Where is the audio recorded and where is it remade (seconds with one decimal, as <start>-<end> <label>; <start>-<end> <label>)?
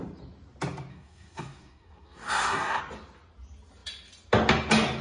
0.0-0.9 recorded; 0.9-2.8 remade; 2.8-5.0 recorded